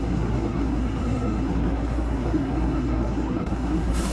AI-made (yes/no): yes